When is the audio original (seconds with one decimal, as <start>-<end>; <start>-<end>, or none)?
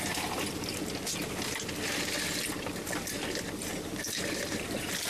0.0-3.7